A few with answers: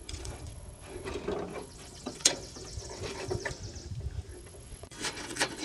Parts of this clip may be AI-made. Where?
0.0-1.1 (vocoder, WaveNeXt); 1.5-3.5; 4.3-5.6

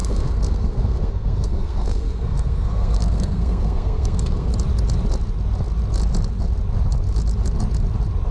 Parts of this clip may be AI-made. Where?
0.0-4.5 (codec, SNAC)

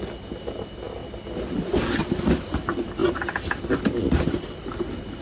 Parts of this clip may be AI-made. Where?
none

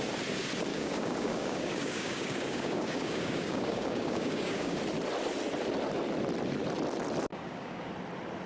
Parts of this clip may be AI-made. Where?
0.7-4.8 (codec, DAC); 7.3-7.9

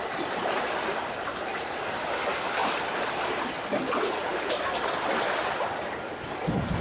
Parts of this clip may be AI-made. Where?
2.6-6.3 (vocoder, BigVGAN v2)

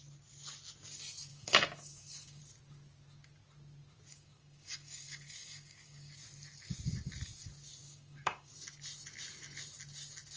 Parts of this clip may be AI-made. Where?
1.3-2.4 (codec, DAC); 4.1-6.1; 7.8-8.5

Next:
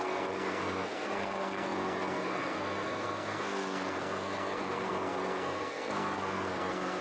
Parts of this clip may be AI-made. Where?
0.0-7.0 (codec, SNAC)